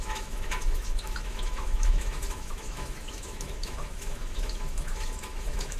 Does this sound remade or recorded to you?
remade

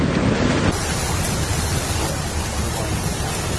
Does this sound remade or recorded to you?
recorded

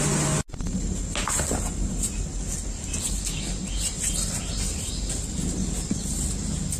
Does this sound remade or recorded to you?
recorded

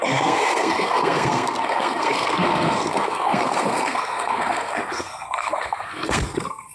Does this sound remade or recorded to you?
remade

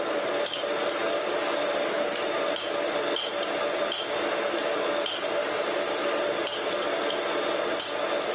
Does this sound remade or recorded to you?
recorded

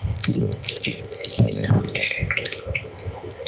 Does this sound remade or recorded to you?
remade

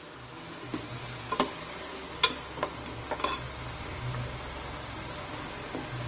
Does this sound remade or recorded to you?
recorded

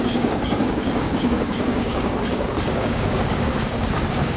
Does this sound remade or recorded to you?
remade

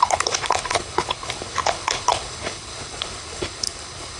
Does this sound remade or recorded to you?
remade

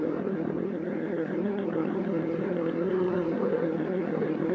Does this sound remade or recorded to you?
remade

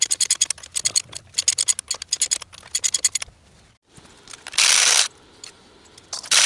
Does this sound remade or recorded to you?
recorded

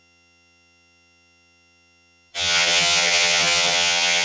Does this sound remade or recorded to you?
remade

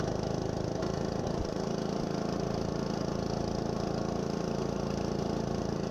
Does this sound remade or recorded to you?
recorded